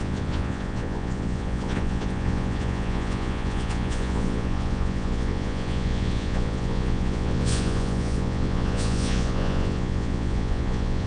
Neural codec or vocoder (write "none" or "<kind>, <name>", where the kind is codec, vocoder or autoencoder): vocoder, Vocos